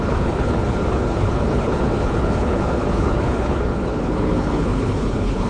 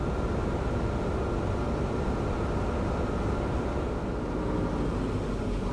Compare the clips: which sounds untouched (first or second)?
second